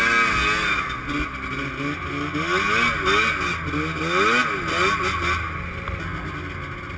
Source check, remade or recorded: recorded